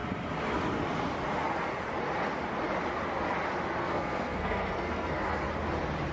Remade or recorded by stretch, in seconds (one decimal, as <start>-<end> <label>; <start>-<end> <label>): 0.0-3.8 recorded; 3.8-5.5 remade; 5.5-6.1 recorded